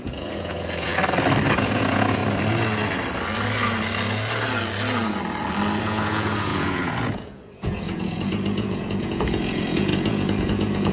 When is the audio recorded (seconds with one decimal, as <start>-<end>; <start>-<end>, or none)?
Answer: 0.9-1.5; 2.2-5.8